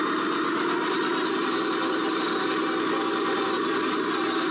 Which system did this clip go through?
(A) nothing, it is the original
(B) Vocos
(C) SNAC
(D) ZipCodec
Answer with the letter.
A